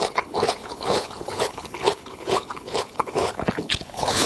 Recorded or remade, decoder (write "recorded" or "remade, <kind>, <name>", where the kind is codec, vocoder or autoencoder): remade, codec, HILCodec